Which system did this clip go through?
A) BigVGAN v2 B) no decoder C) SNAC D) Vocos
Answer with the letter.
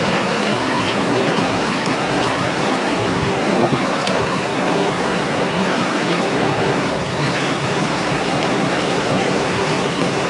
C